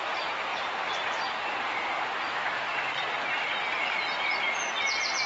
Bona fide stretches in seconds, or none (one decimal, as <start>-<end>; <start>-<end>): none